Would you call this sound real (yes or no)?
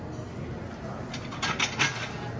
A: yes